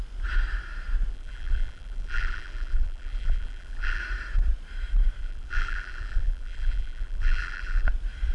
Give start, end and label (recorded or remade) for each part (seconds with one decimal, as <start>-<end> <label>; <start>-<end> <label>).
0.0-1.1 recorded; 1.1-4.0 remade; 4.0-5.2 recorded; 5.2-7.9 remade; 7.9-8.3 recorded